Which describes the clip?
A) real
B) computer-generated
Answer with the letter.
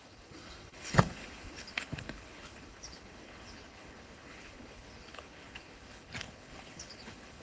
B